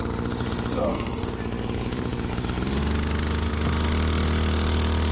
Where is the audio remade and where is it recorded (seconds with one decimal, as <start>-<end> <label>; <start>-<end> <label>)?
0.0-0.9 recorded; 0.9-1.4 remade; 1.4-5.1 recorded